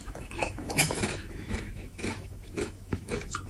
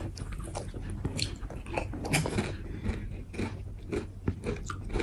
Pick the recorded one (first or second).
second